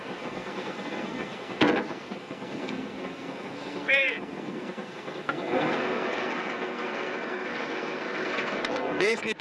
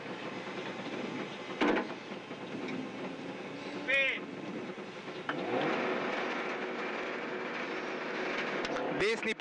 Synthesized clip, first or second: first